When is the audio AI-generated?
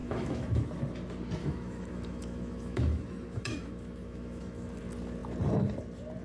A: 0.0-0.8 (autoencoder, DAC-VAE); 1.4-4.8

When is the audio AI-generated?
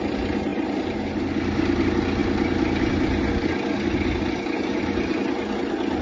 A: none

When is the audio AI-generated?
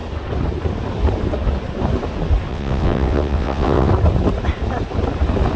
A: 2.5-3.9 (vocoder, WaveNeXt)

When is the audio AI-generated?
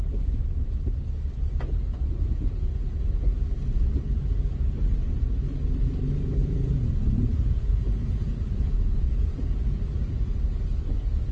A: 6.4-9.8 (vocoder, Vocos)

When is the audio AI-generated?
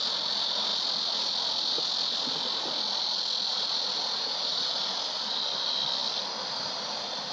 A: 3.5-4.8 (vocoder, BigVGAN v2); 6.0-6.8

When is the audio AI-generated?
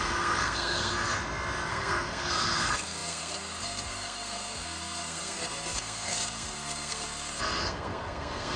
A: 0.0-1.2 (codec, SNAC); 1.7-8.6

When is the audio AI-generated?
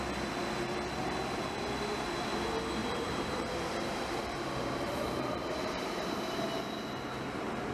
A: 2.8-5.9 (vocoder, BigVGAN v2)